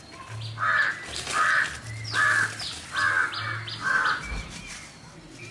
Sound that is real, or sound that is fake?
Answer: real